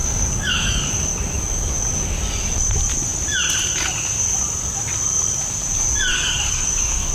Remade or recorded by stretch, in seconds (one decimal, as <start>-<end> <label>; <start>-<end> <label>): 0.0-0.9 remade; 0.9-6.1 recorded; 6.1-7.1 remade